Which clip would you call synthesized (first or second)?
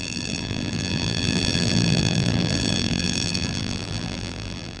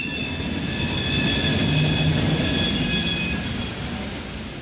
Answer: first